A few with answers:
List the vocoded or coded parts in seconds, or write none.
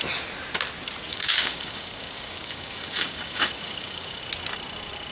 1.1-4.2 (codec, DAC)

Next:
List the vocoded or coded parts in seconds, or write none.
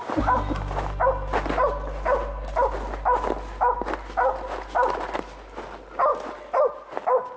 none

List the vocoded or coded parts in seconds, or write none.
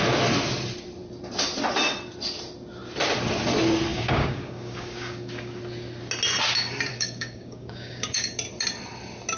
3.9-5.6 (codec, DAC); 6.9-8.3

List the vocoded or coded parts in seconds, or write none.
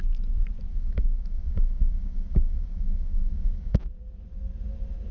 0.7-3.8 (codec, DAC)